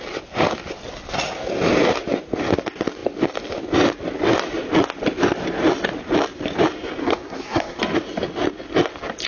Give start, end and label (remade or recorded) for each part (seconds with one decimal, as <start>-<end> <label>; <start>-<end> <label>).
0.0-7.0 recorded; 7.0-7.8 remade; 7.8-9.3 recorded

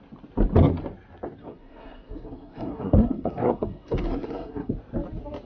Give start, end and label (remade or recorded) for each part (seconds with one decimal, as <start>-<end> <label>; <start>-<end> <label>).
0.0-1.4 recorded; 1.4-4.7 remade; 4.7-5.5 recorded

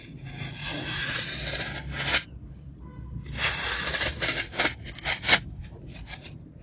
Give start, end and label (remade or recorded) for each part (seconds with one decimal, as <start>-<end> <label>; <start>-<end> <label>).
0.0-0.6 recorded; 0.6-1.2 remade; 1.2-6.6 recorded

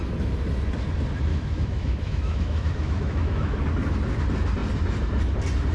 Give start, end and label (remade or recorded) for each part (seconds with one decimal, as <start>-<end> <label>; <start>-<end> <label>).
0.0-1.3 recorded; 1.3-3.6 remade; 3.6-5.7 recorded

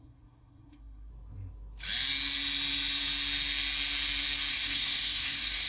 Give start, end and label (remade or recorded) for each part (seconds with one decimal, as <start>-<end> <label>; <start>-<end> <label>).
0.0-1.1 remade; 1.1-4.5 recorded; 4.5-5.7 remade